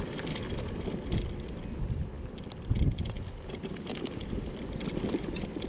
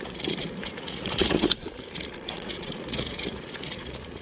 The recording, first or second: first